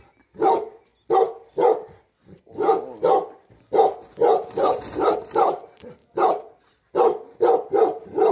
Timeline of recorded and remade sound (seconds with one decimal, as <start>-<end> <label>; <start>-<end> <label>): 0.0-8.3 recorded